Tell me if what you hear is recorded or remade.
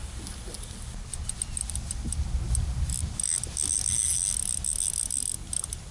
recorded